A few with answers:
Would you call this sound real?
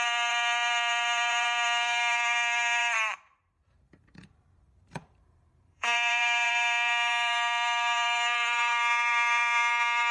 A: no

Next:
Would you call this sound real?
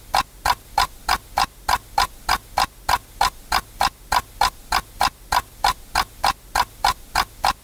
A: yes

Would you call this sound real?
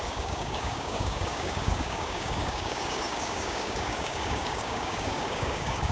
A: no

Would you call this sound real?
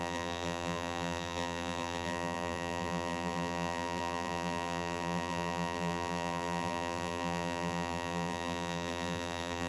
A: no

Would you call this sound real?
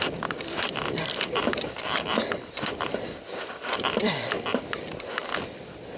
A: no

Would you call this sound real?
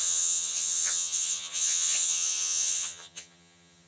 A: no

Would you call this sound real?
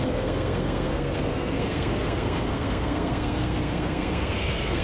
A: no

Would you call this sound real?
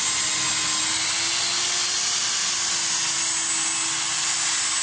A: yes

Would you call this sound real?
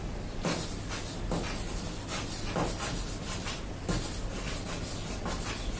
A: yes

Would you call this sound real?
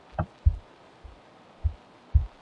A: yes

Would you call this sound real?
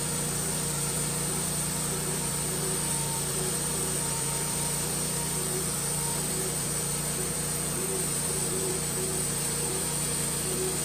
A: no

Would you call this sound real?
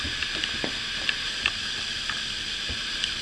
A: yes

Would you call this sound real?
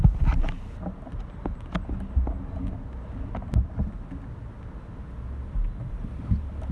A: yes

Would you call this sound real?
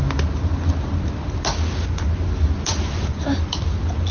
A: yes